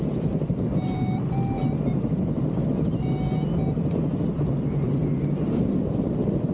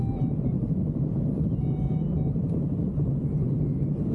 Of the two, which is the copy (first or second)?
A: second